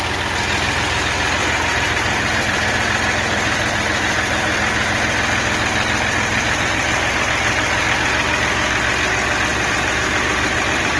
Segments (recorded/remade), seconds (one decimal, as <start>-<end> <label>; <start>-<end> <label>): 0.0-1.4 recorded; 1.4-2.7 remade; 2.7-9.5 recorded; 9.5-11.0 remade